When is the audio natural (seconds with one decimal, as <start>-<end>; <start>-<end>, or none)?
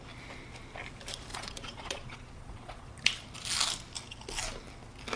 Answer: 0.0-1.3; 2.9-5.2